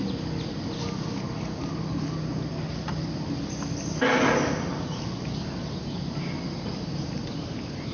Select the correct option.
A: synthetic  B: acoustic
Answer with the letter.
B